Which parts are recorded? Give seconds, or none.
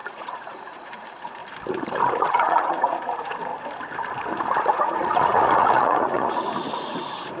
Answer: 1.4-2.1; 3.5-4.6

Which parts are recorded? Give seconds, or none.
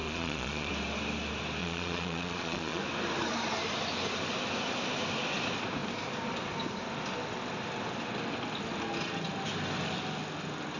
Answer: 0.7-1.6; 2.8-10.8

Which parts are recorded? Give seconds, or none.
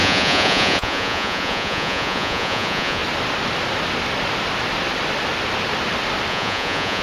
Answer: 3.0-6.3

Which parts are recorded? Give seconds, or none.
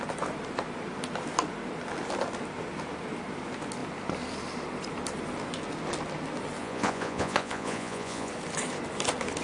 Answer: 0.0-6.6; 8.3-9.4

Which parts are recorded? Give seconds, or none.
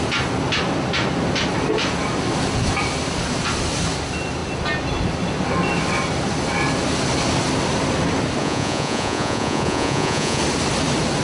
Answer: 0.0-8.4; 10.4-11.2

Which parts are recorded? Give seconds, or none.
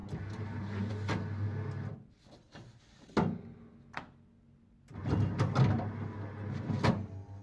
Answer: 0.0-7.4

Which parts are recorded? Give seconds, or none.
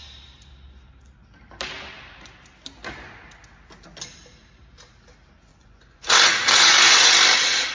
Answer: 0.0-5.5; 7.1-7.7